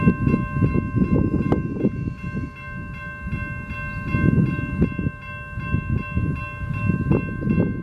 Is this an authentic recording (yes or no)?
yes